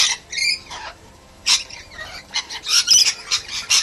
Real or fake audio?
fake